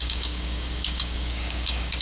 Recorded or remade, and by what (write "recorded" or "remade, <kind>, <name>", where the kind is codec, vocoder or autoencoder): remade, codec, DAC